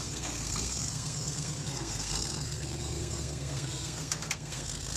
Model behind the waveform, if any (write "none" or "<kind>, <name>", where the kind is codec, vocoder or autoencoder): codec, SNAC